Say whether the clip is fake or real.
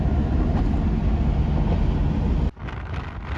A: real